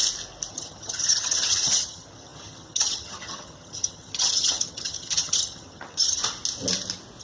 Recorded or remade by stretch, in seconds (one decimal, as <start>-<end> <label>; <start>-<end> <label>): 0.0-0.5 recorded; 0.5-6.2 remade; 6.2-7.2 recorded